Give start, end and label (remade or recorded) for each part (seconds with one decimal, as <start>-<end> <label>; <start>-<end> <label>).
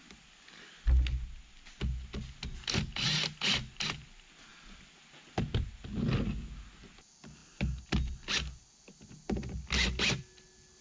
0.0-10.8 recorded